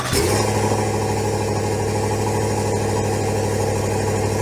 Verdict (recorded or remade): recorded